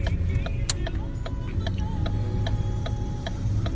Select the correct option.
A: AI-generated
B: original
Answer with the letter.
B